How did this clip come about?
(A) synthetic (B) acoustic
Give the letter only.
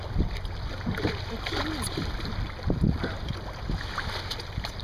B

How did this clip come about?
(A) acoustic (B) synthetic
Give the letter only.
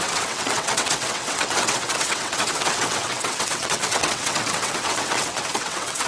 B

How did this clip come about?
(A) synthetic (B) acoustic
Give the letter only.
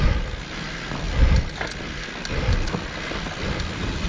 B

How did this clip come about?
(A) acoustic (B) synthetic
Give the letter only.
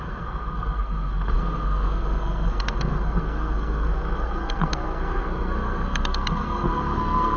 B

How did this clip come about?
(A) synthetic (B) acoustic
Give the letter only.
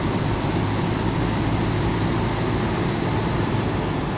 B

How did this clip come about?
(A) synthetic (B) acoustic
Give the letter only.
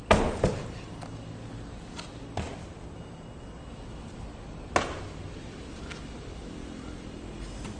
B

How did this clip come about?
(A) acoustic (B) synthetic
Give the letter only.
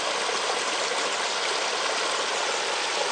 A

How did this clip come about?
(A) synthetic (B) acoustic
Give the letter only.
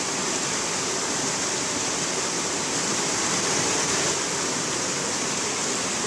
B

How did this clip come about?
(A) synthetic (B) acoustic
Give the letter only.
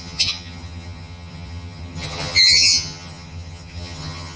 A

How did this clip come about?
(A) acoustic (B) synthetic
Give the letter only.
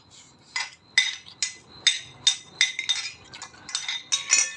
A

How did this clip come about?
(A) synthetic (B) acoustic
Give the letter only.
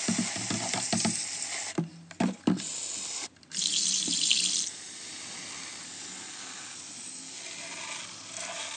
B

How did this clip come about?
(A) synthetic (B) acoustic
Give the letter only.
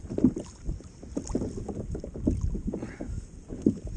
B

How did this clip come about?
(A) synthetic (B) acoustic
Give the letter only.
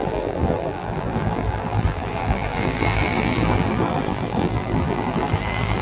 A